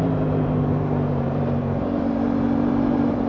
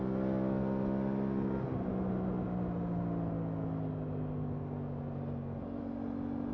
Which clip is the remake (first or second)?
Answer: first